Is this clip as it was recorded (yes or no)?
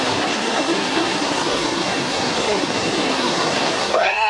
no